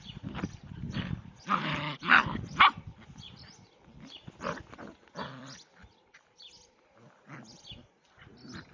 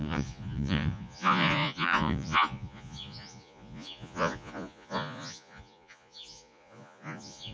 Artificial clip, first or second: second